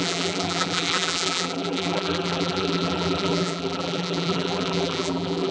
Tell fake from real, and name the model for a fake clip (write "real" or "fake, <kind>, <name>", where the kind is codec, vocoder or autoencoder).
fake, vocoder, BigVGAN v2